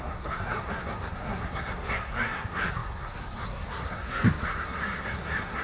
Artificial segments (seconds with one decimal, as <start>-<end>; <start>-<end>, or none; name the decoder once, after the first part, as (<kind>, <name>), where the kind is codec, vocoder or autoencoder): 0.0-5.6 (codec, SNAC)